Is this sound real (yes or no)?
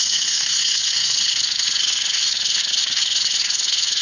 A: no